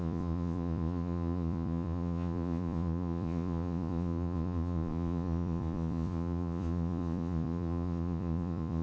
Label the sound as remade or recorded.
remade